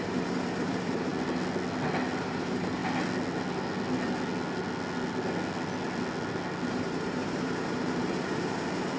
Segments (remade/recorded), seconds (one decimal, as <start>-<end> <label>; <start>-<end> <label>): 0.0-1.1 remade; 1.1-2.2 recorded; 2.2-2.8 remade; 2.8-6.7 recorded; 6.7-9.0 remade